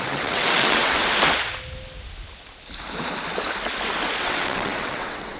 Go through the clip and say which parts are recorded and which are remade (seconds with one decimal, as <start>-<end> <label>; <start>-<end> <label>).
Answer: 0.0-1.0 remade; 1.0-4.2 recorded; 4.2-5.4 remade